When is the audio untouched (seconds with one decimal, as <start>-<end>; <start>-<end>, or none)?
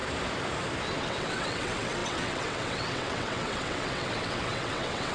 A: 0.0-1.0